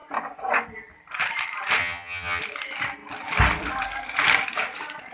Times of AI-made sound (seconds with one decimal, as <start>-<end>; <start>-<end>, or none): 1.8-2.4

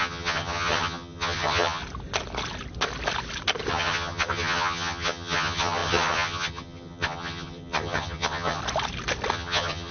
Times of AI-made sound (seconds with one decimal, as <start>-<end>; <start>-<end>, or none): 0.0-1.8; 3.7-8.6; 9.3-9.9